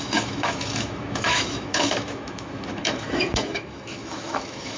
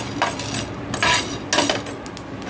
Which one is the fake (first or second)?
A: first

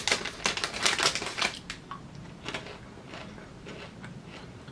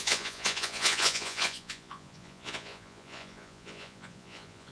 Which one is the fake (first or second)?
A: second